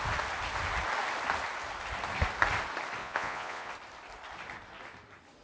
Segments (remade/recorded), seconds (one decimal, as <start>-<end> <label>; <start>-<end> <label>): 0.0-3.0 recorded; 3.0-3.7 remade; 3.7-5.4 recorded